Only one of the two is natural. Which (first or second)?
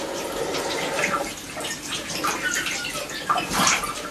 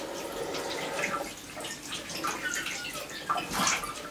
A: second